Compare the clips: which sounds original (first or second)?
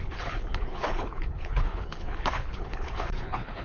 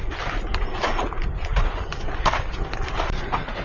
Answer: second